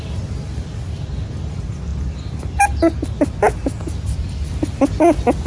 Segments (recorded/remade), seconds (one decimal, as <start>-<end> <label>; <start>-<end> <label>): 0.0-5.5 recorded